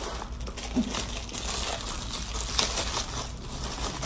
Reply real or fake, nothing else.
real